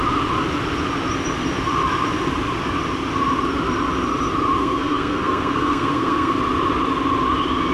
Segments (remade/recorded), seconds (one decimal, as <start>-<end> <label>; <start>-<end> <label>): 0.0-4.6 recorded; 4.6-6.4 remade; 6.4-7.7 recorded